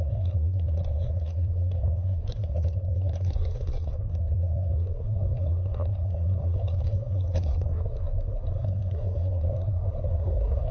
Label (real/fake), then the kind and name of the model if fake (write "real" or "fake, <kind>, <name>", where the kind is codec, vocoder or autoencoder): fake, codec, SNAC